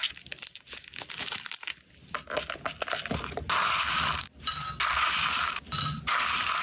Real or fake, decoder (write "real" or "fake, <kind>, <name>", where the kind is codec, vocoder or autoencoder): real